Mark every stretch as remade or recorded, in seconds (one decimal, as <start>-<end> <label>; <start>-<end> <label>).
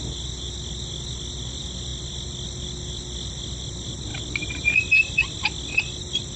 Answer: 0.0-6.4 recorded